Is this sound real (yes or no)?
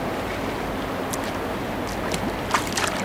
yes